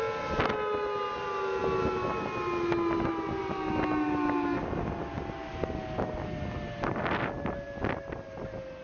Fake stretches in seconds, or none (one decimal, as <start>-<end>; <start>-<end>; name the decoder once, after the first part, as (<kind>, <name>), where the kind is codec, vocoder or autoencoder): none